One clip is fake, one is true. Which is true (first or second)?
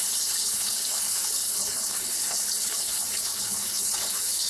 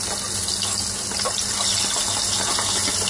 second